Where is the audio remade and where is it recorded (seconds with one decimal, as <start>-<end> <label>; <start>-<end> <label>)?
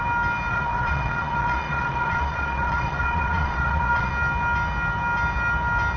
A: 0.0-0.5 recorded; 0.5-4.1 remade; 4.1-6.0 recorded